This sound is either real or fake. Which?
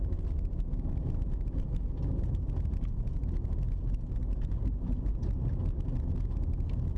real